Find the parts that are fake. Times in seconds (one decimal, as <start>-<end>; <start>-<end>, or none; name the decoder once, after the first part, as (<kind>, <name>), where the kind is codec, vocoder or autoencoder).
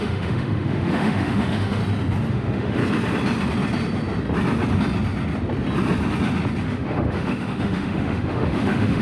0.0-1.8 (autoencoder, DAC-VAE); 2.3-2.8; 6.6-9.0